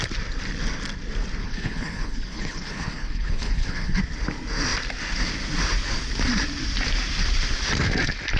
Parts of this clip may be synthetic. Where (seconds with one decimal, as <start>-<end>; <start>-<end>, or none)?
1.4-4.0